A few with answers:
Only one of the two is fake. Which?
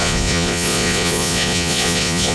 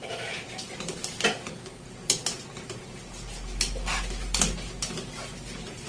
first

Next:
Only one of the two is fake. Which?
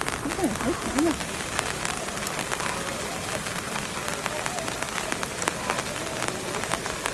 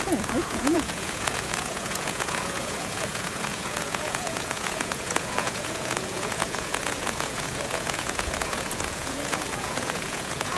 second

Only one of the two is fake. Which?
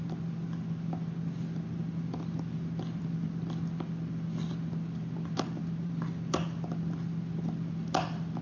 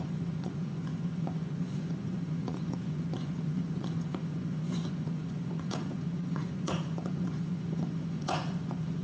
second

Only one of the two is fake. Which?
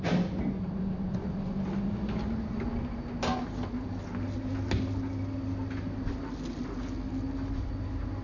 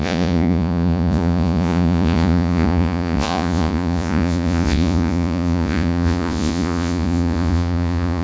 second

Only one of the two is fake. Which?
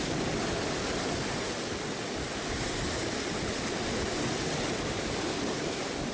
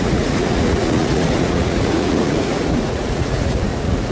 second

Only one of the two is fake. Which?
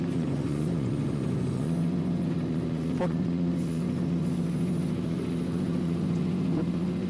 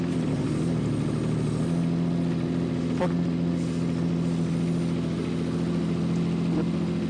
first